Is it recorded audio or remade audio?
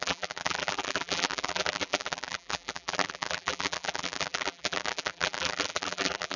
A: remade